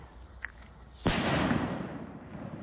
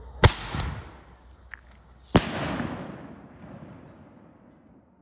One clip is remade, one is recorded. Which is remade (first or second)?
first